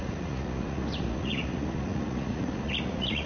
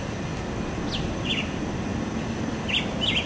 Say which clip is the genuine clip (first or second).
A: second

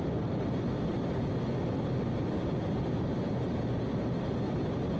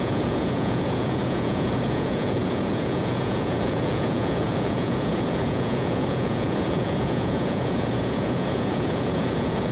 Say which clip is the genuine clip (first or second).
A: first